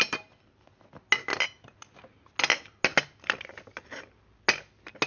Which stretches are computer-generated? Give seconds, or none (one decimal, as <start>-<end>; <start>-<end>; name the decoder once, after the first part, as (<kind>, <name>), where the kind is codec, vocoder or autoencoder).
none